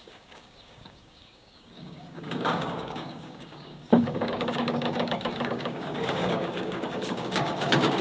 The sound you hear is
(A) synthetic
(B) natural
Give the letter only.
A